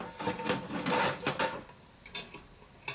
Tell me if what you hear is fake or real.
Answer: real